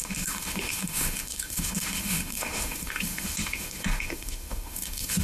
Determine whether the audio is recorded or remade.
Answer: remade